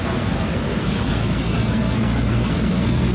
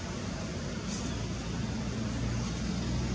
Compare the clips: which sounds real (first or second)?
second